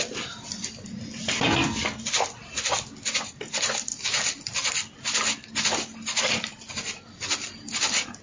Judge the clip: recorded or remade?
recorded